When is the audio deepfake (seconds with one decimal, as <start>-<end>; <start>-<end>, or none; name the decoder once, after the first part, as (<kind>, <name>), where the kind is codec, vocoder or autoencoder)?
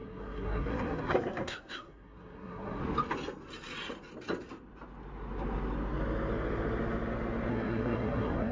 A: 0.0-2.8 (codec, SNAC); 7.5-8.5